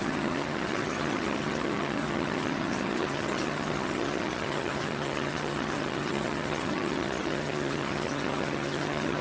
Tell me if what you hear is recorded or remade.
remade